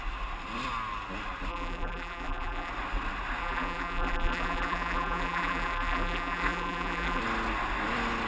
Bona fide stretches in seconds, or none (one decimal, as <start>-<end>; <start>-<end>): 0.0-1.5; 2.7-3.4; 7.2-8.3